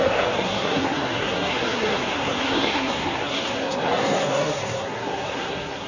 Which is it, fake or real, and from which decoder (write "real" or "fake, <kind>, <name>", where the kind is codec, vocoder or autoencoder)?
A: fake, codec, SNAC